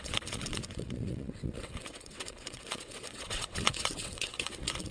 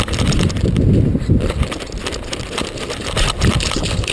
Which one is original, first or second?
second